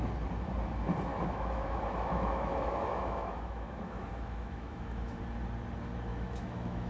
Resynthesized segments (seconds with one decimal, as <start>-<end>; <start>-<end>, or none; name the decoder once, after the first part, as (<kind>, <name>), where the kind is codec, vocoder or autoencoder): 1.1-5.2 (autoencoder, DAC-VAE); 6.1-6.9